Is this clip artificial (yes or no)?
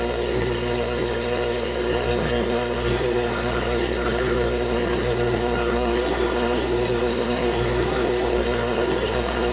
yes